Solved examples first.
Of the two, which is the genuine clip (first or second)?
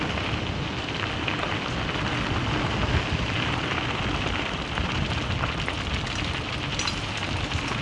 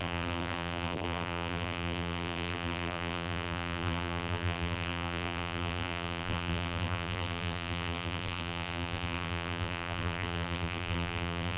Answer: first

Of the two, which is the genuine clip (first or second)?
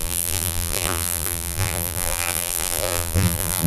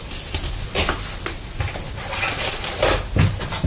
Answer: second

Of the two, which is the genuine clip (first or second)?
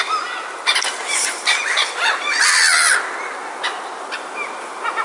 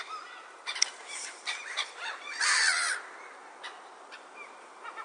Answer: first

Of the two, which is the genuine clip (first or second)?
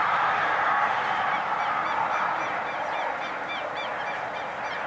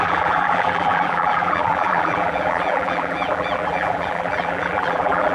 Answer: first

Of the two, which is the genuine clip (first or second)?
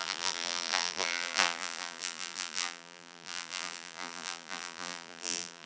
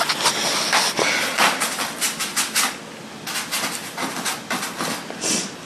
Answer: second